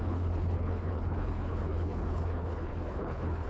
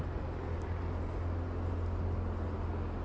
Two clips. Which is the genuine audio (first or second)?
second